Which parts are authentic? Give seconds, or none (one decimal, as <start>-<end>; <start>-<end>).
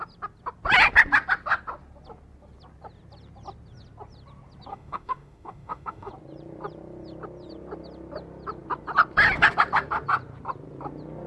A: 0.0-4.7; 6.1-11.3